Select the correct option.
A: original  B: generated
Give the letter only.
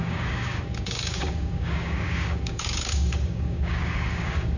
B